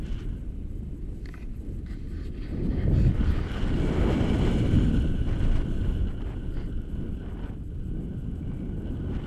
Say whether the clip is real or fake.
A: real